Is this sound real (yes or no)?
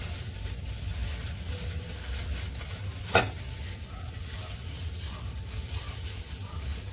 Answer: yes